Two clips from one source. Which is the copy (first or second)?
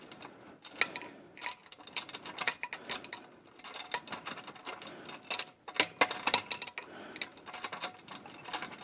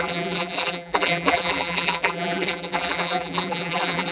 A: second